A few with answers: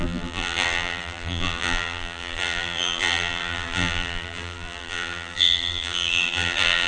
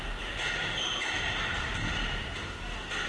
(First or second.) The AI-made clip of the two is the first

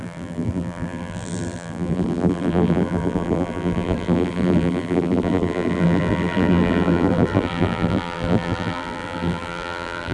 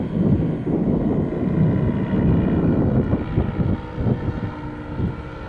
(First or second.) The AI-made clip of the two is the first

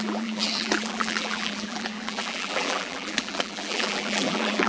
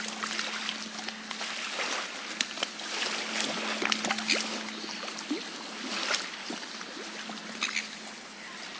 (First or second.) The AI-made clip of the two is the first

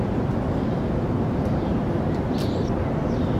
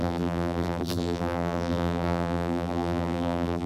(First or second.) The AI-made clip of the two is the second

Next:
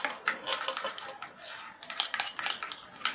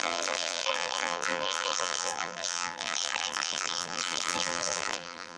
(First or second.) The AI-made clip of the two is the second